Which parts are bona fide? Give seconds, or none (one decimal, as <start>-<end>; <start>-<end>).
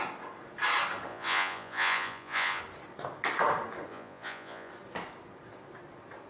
0.0-1.1; 2.6-3.9; 4.7-6.3